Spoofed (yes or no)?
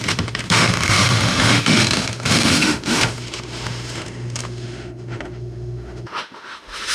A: yes